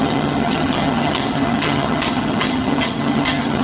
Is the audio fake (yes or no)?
yes